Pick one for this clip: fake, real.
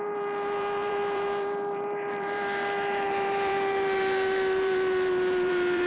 fake